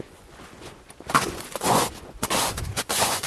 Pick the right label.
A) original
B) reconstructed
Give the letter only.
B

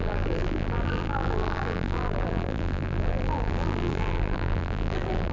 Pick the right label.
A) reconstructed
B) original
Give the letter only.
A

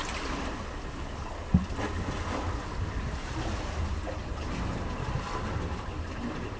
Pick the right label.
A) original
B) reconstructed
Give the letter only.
A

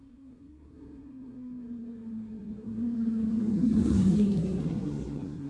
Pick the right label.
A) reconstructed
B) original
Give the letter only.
A